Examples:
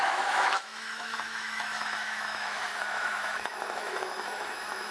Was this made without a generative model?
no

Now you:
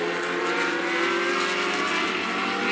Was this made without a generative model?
yes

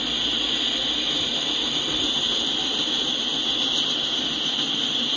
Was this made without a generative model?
yes